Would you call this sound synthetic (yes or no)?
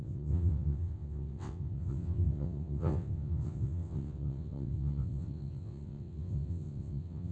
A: yes